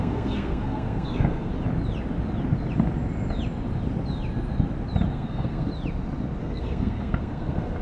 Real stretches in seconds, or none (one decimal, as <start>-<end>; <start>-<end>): 1.5-5.1; 5.7-6.4